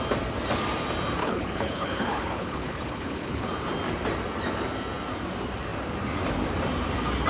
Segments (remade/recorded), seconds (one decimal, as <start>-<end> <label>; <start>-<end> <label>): 0.0-1.2 recorded; 1.2-3.5 remade; 3.5-7.3 recorded